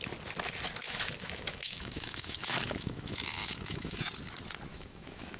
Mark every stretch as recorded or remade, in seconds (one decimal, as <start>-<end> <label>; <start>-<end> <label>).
0.0-0.8 recorded; 0.8-4.0 remade; 4.0-4.7 recorded; 4.7-5.4 remade